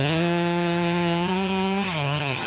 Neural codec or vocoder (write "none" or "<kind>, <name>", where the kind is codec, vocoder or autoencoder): vocoder, HiFi-GAN